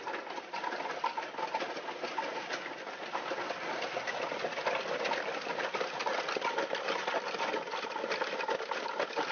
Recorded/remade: recorded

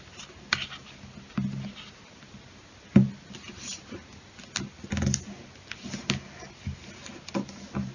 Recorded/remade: recorded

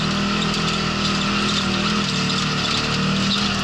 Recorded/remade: recorded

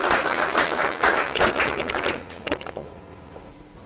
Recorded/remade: remade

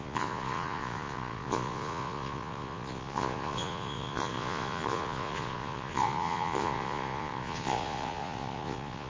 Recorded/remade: remade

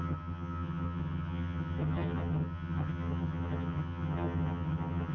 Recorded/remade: remade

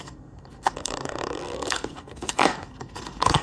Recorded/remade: remade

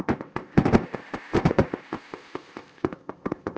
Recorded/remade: remade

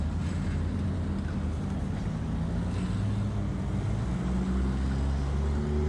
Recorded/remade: recorded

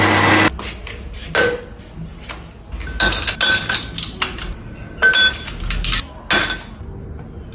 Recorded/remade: recorded